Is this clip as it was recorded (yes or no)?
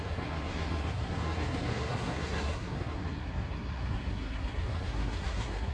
no